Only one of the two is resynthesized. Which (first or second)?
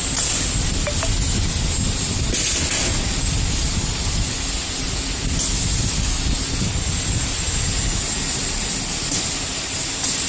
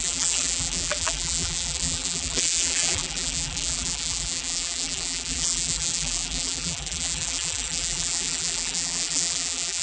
second